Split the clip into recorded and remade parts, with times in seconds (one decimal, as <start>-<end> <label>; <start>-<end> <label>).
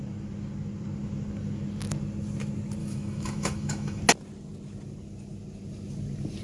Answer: 0.0-2.8 recorded; 2.8-4.0 remade; 4.0-6.4 recorded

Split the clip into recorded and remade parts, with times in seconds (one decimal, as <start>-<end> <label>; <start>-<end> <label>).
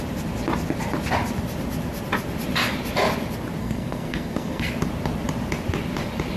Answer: 0.0-3.6 recorded; 3.6-4.7 remade; 4.7-6.4 recorded